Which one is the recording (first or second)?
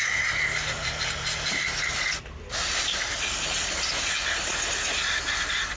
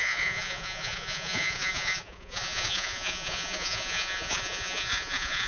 first